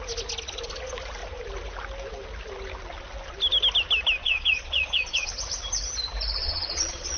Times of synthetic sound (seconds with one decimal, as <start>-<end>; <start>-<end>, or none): 4.2-5.3; 6.4-7.2